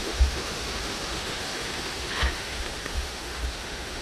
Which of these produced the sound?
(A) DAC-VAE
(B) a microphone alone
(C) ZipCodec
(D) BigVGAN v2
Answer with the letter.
A